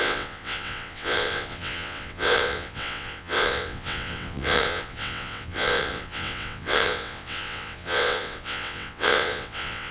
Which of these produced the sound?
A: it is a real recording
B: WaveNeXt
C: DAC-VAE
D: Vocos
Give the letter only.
B